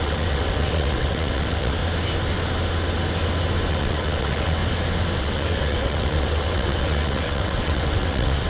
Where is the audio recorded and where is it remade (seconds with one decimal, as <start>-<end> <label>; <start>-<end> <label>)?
0.0-1.8 remade; 1.8-3.7 recorded; 3.7-4.6 remade; 4.6-5.2 recorded; 5.2-8.5 remade